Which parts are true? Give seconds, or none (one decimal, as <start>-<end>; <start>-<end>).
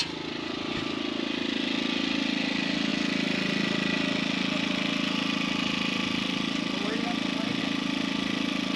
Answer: 0.0-8.8